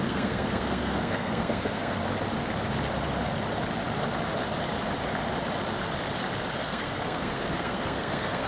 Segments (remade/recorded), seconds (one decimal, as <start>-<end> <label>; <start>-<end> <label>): 0.0-2.0 remade; 2.0-6.5 recorded; 6.5-8.5 remade